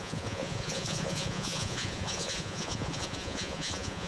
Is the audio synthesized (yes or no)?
yes